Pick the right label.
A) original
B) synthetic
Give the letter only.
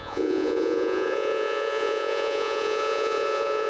B